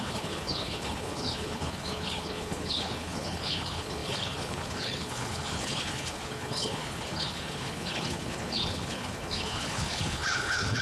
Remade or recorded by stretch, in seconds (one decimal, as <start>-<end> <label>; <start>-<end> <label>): 0.0-10.8 remade